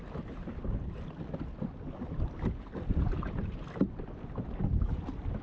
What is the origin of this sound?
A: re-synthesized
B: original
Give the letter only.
B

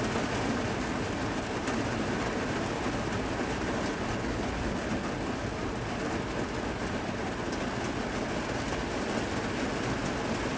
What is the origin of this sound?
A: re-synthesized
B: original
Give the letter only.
B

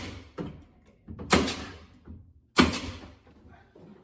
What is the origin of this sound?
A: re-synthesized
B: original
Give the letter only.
B